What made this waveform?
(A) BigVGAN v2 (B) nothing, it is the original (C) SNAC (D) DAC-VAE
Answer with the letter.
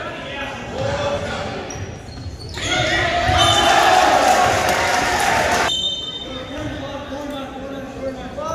B